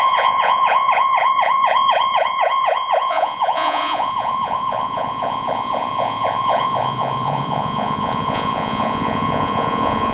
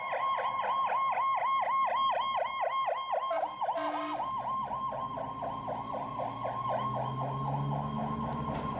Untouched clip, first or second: second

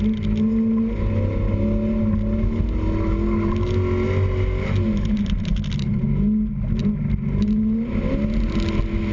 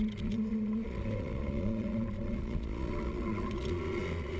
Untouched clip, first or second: first